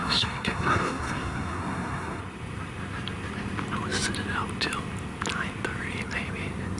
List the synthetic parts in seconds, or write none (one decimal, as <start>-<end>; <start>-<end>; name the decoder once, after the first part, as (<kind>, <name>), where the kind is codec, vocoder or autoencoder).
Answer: 0.0-2.2 (codec, SNAC)